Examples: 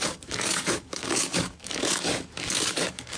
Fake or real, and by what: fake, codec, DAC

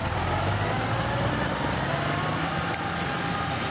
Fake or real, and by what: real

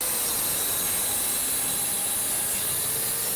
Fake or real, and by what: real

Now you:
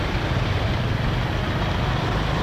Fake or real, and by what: real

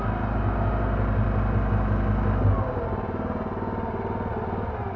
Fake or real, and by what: real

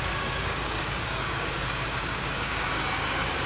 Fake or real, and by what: fake, codec, DAC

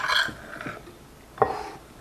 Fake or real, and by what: real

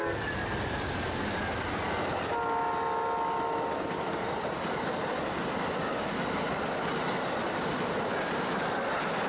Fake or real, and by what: real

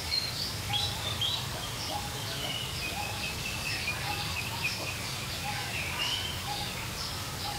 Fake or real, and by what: fake, codec, DAC